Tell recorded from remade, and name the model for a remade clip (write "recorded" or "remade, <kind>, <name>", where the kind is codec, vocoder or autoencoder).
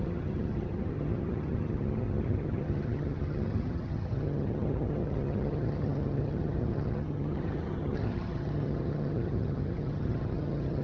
remade, vocoder, HiFi-GAN